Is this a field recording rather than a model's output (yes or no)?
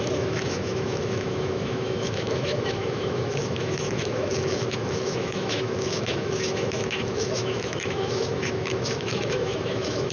no